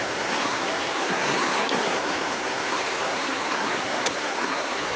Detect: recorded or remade remade